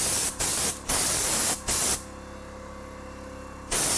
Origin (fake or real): real